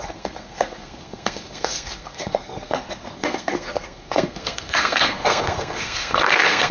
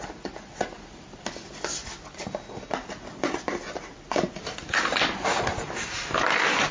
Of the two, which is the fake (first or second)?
first